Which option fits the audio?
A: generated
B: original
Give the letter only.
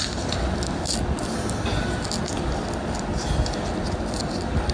B